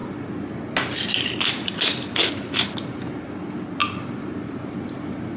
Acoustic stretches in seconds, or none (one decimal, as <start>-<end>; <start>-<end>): 0.0-5.4